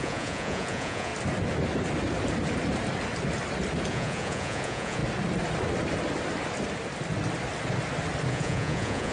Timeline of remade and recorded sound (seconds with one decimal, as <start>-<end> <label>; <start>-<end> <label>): 0.0-1.1 remade; 1.1-3.9 recorded; 3.9-5.0 remade; 5.0-8.3 recorded; 8.3-9.1 remade